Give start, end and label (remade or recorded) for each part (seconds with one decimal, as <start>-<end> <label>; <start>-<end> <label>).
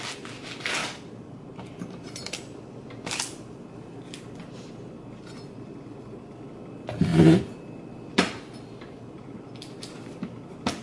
0.0-0.8 recorded; 0.8-2.2 remade; 2.2-10.8 recorded